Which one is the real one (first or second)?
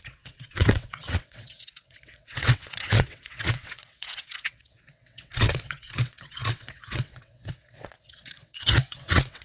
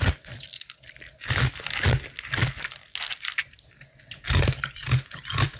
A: second